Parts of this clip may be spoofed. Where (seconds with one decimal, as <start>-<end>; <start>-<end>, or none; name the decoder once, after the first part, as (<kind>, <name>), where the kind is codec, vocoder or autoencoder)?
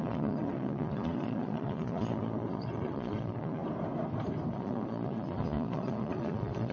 0.0-3.6 (vocoder, Vocos); 4.5-6.7